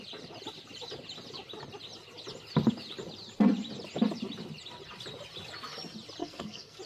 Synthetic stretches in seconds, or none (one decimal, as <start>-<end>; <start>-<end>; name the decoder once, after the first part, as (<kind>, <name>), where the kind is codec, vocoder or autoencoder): 6.2-6.8 (codec, SNAC)